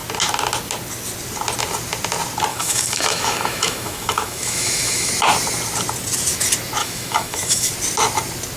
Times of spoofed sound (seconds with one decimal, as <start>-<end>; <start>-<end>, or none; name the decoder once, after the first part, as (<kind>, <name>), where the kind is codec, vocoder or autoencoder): 2.5-5.1 (autoencoder, DAC-VAE); 6.8-7.7